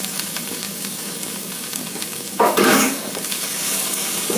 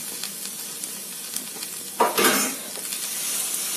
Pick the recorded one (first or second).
second